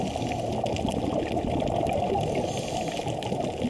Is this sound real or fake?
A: real